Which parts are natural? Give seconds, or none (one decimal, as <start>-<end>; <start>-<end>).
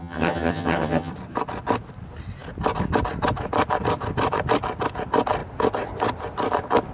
1.1-6.9